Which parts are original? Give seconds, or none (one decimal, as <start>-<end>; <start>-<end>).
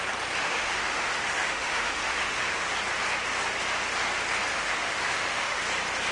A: 0.0-0.4; 2.6-4.5; 5.6-6.1